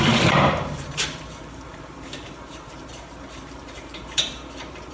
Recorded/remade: remade